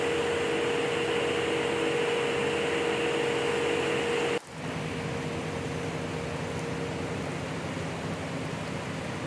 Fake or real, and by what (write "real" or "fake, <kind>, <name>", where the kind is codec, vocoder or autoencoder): real